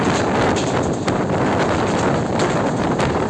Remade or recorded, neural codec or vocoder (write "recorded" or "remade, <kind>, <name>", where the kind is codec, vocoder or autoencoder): recorded